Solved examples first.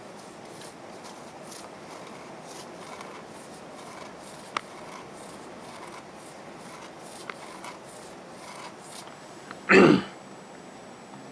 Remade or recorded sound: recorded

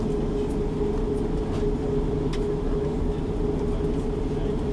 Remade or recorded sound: recorded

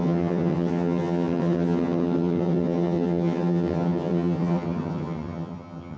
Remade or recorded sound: remade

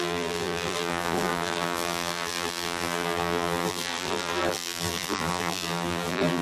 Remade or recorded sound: remade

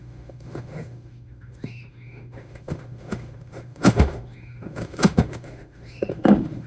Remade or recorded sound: remade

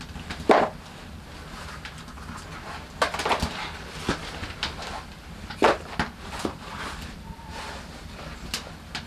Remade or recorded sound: recorded